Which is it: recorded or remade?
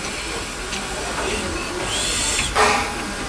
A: recorded